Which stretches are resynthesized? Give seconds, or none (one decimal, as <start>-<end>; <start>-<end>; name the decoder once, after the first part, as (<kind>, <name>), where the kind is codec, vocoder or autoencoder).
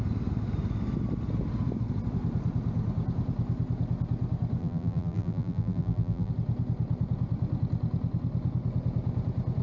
4.6-6.3 (vocoder, BigVGAN v2)